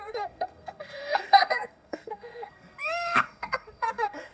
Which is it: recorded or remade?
remade